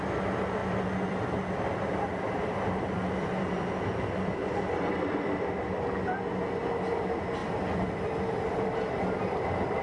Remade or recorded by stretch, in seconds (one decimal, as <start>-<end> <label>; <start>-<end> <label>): 0.0-0.6 recorded; 0.6-3.7 remade; 3.7-4.4 recorded; 4.4-5.2 remade; 5.2-7.4 recorded; 7.4-9.8 remade